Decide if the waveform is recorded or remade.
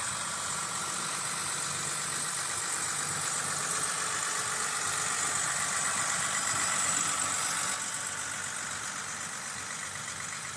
recorded